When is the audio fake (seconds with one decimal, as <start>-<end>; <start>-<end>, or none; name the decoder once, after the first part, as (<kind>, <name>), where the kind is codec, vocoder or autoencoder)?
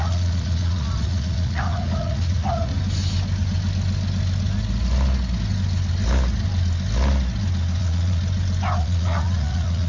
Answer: 0.0-2.7 (vocoder, Vocos); 7.8-8.2; 8.8-9.9